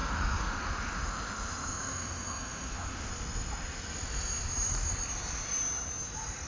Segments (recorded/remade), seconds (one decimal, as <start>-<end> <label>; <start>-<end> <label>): 0.0-3.1 remade; 3.1-6.5 recorded